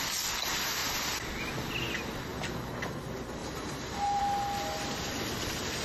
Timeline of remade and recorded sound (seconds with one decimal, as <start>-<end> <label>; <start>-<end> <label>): 0.0-2.3 recorded; 2.3-3.0 remade; 3.0-3.4 recorded; 3.4-4.2 remade; 4.2-5.8 recorded